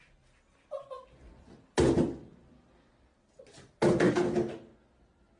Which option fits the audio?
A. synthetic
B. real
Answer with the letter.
B